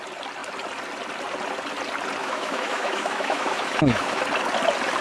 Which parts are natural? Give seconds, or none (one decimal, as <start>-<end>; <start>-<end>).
0.0-2.2; 4.2-5.0